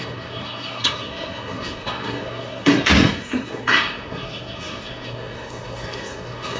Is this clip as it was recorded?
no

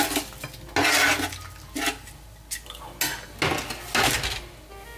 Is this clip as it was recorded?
yes